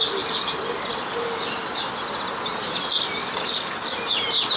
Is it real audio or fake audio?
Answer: real